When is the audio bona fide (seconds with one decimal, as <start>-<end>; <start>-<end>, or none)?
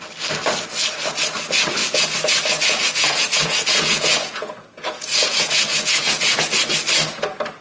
0.0-1.8; 6.4-7.6